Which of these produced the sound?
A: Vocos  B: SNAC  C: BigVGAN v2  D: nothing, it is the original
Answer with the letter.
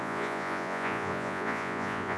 A